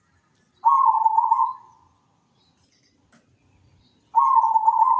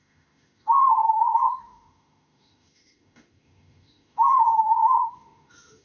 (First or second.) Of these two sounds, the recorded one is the first